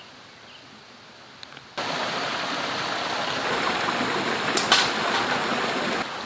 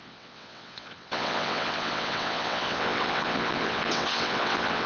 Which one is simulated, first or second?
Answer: second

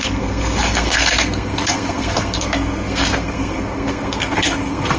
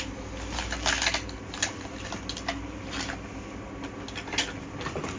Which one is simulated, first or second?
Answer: first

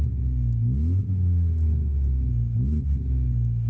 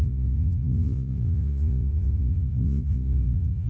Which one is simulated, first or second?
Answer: second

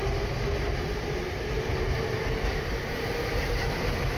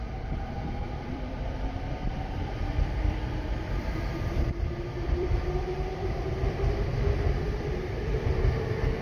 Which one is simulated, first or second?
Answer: second